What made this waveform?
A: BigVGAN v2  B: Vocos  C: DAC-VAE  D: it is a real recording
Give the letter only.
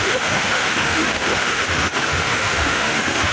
C